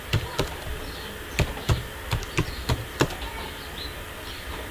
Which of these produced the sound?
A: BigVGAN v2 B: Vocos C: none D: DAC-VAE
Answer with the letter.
A